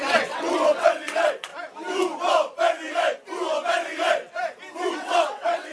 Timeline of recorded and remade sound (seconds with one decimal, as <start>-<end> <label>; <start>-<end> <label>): 0.0-1.5 remade; 1.5-4.9 recorded; 4.9-5.7 remade